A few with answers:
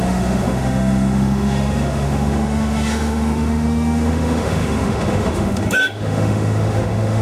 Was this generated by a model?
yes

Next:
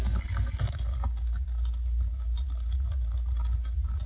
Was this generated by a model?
no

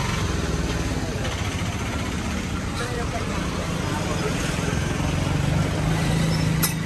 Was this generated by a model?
no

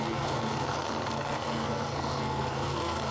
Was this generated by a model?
yes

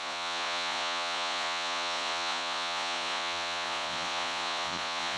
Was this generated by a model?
yes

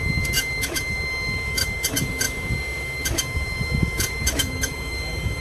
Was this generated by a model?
yes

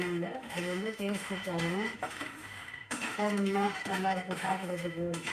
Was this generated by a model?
yes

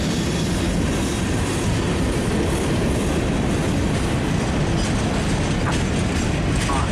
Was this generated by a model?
no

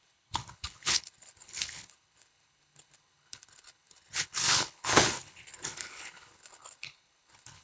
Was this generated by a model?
yes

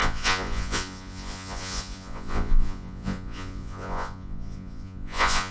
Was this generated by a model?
yes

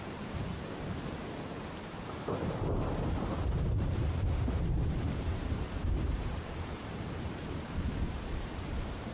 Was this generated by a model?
yes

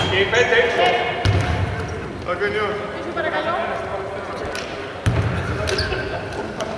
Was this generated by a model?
no